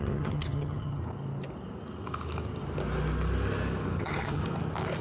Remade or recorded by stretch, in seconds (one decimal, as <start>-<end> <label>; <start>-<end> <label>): 0.0-1.0 remade; 1.0-4.0 recorded; 4.0-4.4 remade; 4.4-5.0 recorded